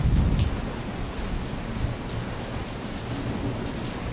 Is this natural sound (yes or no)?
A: yes